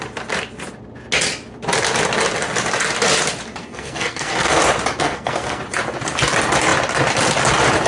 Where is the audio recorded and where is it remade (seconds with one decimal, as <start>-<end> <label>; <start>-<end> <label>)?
0.0-3.6 recorded; 3.6-4.6 remade; 4.6-5.0 recorded; 5.0-5.6 remade; 5.6-7.9 recorded